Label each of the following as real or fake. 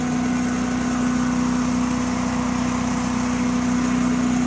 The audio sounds real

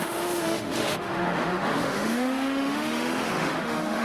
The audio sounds fake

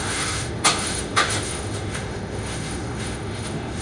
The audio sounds fake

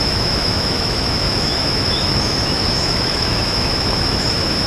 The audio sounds fake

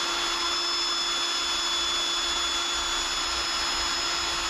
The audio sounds real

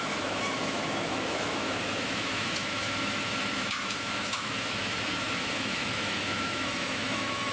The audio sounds fake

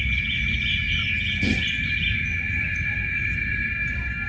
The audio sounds real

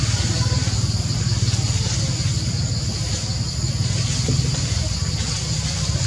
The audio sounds real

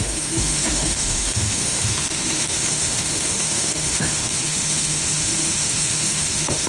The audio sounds fake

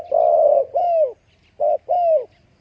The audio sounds real